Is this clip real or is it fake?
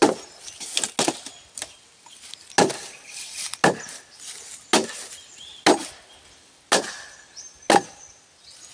real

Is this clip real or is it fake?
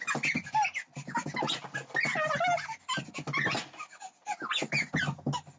real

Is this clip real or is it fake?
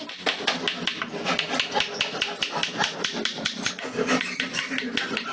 real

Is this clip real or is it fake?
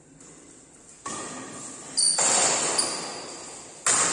real